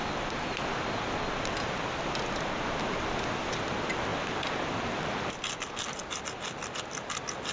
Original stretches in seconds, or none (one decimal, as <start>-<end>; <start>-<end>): 0.0-7.5